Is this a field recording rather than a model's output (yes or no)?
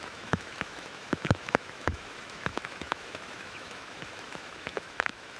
no